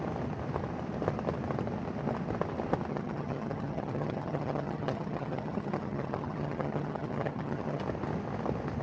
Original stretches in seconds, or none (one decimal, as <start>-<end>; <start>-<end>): 0.0-2.9; 7.8-8.8